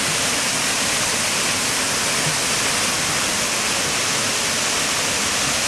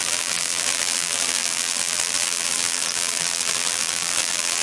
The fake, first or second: second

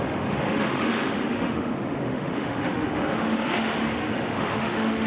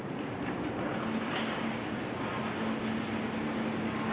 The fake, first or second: first